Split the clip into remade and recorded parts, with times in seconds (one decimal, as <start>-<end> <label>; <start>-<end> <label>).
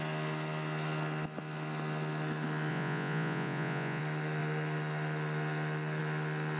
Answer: 0.0-2.7 recorded; 2.7-4.0 remade; 4.0-6.6 recorded